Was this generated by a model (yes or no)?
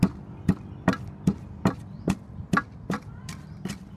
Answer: no